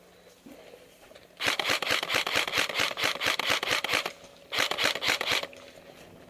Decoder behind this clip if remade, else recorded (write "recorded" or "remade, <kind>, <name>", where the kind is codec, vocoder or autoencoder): recorded